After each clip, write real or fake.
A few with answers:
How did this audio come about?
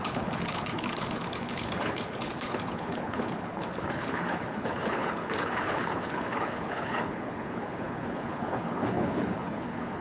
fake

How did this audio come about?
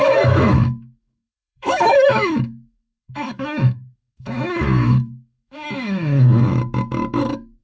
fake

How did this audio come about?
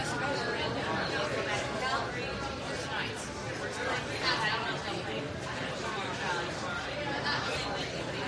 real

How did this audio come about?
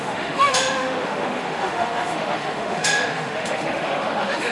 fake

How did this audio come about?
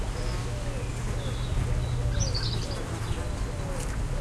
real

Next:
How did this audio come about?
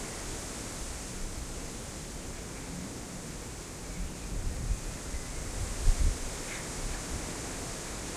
fake